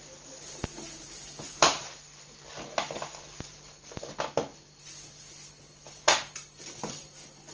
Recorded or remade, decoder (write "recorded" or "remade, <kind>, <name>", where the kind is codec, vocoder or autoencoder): remade, vocoder, BigVGAN v2